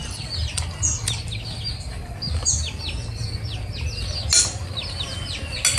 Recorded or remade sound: recorded